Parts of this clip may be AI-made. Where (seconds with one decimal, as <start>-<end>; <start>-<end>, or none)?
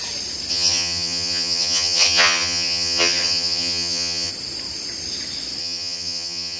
0.5-4.3; 5.6-6.6